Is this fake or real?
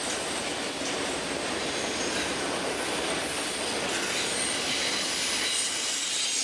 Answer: real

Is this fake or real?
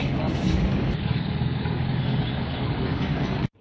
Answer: fake